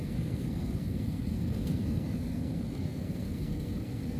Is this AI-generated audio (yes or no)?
yes